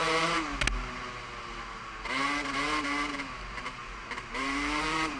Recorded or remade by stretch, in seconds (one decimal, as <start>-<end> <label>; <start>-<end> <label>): 0.0-3.8 recorded; 3.8-5.2 remade

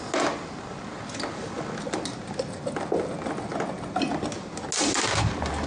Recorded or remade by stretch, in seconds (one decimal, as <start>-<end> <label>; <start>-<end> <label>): 0.0-5.7 recorded